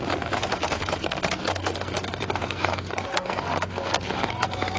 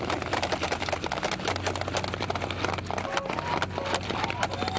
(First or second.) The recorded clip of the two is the second